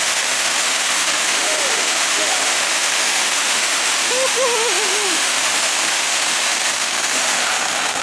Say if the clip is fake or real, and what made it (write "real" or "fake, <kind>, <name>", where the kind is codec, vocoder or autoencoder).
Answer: fake, autoencoder, DAC-VAE